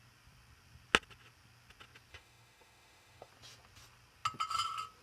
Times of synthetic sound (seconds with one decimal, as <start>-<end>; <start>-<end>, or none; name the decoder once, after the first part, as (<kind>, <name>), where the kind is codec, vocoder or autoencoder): 2.1-3.3 (autoencoder, DAC-VAE)